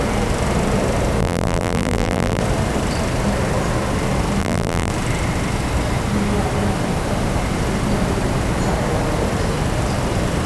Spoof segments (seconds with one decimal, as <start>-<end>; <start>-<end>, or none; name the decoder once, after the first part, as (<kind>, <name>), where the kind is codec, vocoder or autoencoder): 1.2-2.4 (vocoder, BigVGAN v2); 4.4-4.9